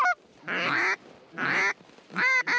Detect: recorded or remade recorded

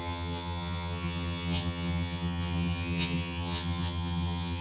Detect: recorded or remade remade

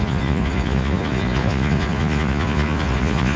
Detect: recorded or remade remade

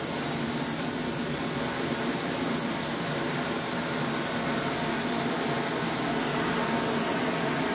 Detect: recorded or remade recorded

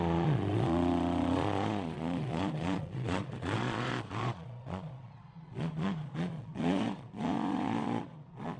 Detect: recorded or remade remade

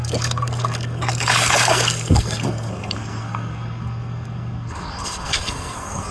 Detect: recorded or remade remade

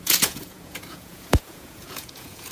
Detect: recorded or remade remade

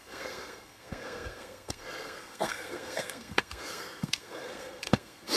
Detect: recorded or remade remade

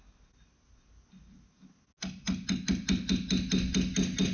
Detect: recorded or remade recorded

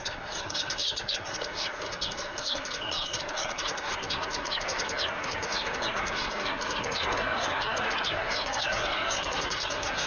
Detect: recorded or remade remade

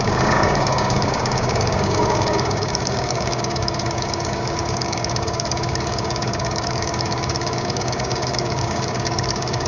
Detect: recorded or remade remade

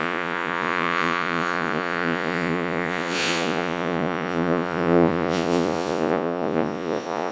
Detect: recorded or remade remade